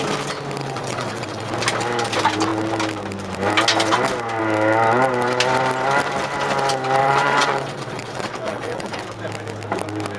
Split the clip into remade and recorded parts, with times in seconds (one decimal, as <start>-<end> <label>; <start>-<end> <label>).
0.0-0.6 recorded; 0.6-1.5 remade; 1.5-7.0 recorded; 7.0-9.0 remade; 9.0-10.2 recorded